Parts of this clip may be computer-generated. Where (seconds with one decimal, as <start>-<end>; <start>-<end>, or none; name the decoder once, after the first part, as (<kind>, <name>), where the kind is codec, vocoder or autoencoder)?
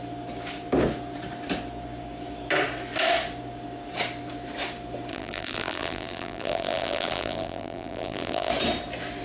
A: 5.1-8.5 (vocoder, BigVGAN v2)